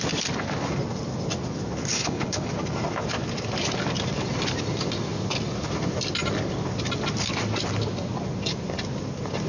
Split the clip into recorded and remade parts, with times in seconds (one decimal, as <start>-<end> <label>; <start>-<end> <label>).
0.0-1.9 recorded; 1.9-2.5 remade; 2.5-9.5 recorded